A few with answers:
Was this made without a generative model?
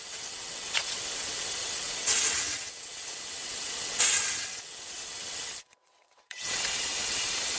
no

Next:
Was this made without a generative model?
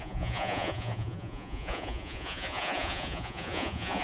no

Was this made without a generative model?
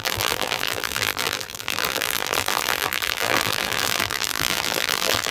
no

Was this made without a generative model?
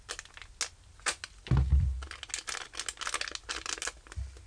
yes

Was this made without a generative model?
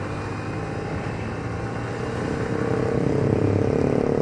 yes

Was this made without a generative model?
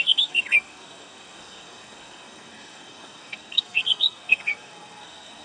no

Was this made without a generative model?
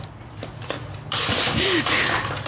yes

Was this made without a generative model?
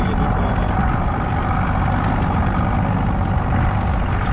yes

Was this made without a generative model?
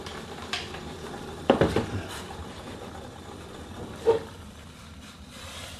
no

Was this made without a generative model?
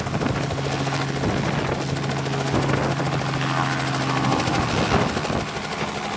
yes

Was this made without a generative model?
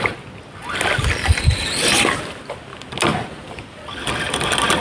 yes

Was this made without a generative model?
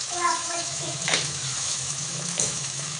no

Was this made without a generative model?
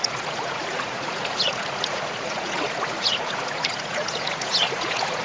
no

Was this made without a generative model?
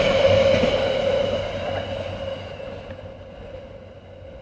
yes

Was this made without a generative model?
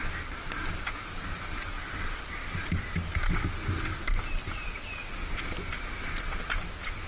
yes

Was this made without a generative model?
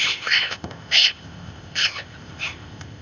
no